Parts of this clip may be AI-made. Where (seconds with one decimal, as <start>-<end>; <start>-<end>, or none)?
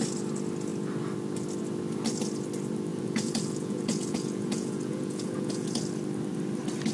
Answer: 2.9-5.8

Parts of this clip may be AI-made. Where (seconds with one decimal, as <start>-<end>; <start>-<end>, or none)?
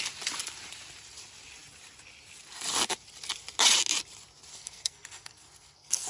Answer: 4.5-6.1